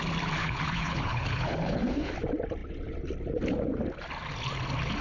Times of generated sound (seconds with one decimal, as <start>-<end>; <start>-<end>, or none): 0.4-2.1